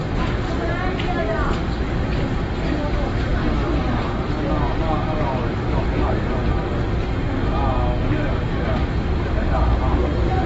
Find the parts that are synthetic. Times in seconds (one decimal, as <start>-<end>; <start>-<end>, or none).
none